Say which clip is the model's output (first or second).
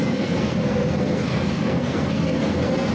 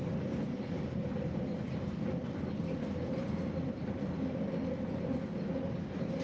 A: first